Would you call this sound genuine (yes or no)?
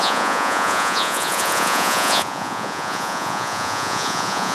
no